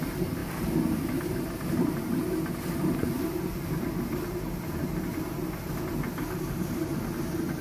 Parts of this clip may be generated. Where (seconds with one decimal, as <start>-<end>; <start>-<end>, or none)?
none